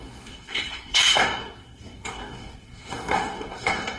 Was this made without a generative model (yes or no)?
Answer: no